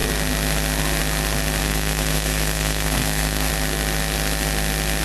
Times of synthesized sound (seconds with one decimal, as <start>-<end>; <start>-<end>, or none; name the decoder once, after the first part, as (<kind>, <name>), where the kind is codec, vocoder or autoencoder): 1.6-3.5 (codec, SNAC)